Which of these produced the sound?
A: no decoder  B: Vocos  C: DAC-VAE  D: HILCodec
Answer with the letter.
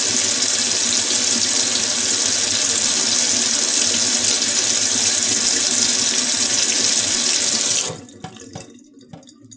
A